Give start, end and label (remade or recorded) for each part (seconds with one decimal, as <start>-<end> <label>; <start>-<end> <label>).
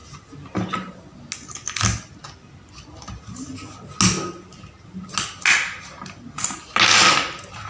0.0-7.7 recorded